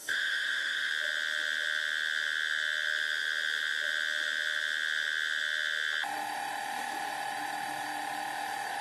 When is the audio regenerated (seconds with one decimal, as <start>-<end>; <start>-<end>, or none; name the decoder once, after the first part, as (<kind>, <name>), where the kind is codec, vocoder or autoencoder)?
0.0-0.9 (autoencoder, DAC-VAE)